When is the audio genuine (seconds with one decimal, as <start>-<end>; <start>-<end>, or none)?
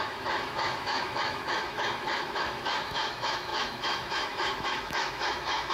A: none